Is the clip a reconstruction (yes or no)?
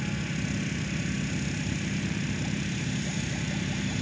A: no